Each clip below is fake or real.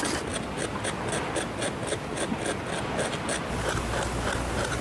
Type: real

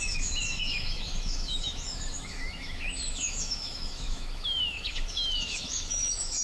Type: fake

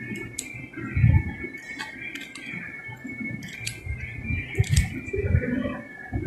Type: real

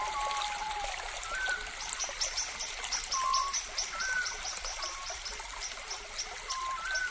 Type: fake